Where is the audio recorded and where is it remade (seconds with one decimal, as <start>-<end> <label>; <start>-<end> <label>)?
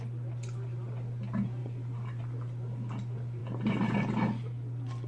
0.0-1.6 recorded; 1.6-2.2 remade; 2.2-5.1 recorded